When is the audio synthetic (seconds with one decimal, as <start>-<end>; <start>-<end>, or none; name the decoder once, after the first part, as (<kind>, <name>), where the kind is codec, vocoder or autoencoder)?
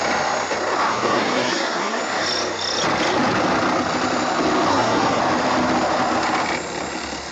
0.9-2.0 (codec, SNAC); 4.7-5.2